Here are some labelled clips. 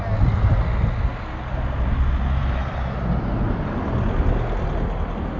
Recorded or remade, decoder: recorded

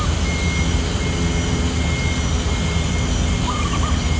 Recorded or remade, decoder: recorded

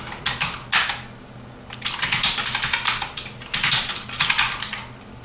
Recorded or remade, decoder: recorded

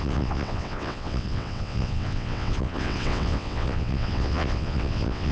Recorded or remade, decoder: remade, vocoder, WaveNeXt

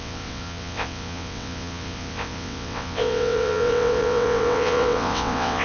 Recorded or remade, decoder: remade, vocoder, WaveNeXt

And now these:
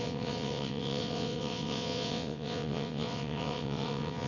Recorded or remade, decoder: remade, vocoder, WaveNeXt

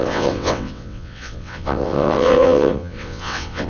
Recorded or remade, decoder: remade, vocoder, WaveNeXt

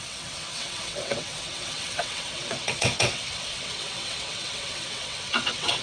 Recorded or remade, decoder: remade, vocoder, WaveNeXt